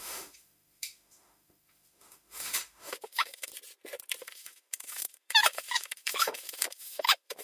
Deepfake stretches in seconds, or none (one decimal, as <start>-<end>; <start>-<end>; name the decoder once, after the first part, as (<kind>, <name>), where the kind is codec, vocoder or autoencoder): 0.0-3.5 (autoencoder, DAC-VAE); 4.2-7.4